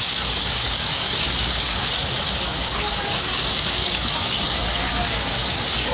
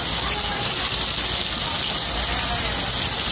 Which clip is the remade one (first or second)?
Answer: first